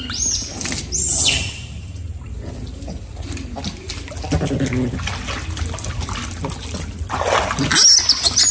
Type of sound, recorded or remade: recorded